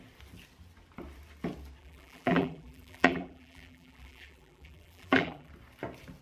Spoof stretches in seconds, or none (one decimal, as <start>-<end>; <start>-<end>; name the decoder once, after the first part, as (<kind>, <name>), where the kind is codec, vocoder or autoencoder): 1.8-5.5 (vocoder, BigVGAN v2)